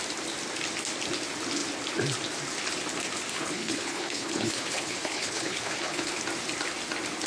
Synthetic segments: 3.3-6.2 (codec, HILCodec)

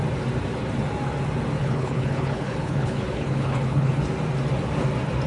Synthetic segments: 1.6-3.9 (codec, HILCodec)

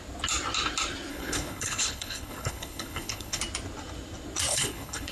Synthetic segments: 1.1-3.4 (codec, HILCodec); 4.5-5.1

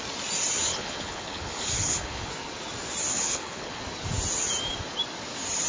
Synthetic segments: 0.7-2.3 (codec, HILCodec); 3.1-3.8

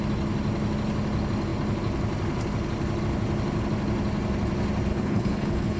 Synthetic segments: 4.9-5.8 (codec, HILCodec)